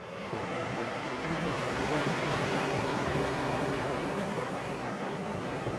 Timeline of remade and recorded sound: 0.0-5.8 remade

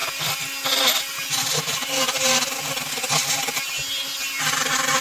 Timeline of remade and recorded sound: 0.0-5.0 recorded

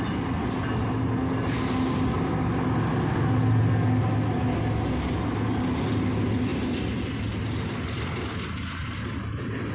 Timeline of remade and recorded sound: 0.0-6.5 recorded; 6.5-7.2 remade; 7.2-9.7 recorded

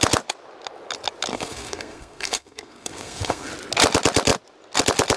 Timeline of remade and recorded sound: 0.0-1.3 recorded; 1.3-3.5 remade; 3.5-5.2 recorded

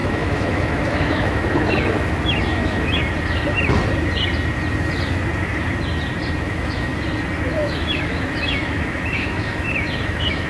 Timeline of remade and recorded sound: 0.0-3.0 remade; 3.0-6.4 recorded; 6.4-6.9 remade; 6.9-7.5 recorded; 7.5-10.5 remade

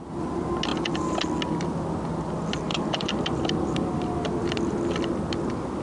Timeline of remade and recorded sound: 0.0-2.7 recorded; 2.7-4.5 remade; 4.5-5.8 recorded

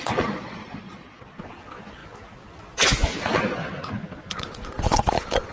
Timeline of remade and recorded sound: 0.0-2.0 remade; 2.0-3.2 recorded; 3.2-3.6 remade; 3.6-4.3 recorded; 4.3-5.5 remade

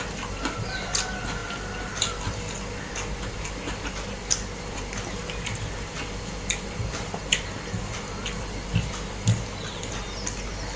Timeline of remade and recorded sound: 0.0-10.8 recorded